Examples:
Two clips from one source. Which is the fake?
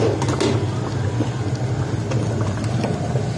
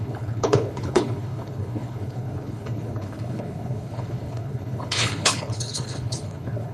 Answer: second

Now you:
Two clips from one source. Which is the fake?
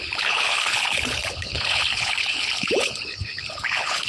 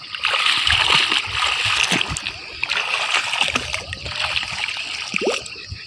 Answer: first